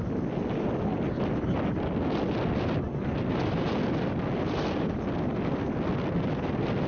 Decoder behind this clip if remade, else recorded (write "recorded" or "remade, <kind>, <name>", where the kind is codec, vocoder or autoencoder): recorded